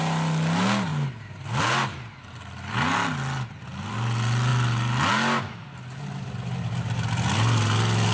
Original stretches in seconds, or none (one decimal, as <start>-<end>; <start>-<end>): 0.0-8.1